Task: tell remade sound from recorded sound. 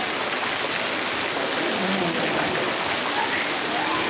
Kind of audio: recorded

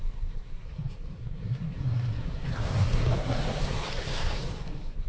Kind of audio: remade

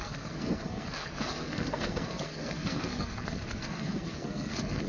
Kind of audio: remade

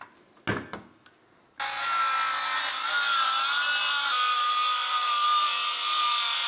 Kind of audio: recorded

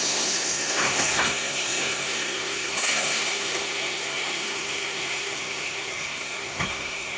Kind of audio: remade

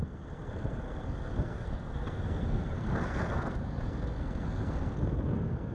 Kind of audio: remade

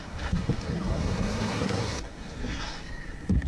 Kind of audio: remade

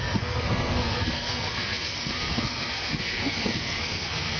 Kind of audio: remade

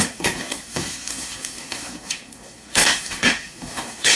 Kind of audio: remade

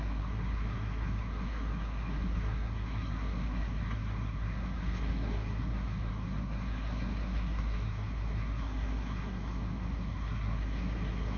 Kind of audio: remade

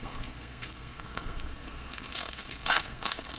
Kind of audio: remade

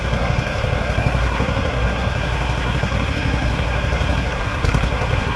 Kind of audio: remade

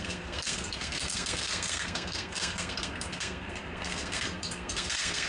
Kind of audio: remade